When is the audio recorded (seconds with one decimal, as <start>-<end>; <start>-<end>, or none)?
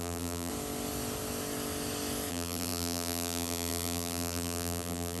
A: 0.5-2.3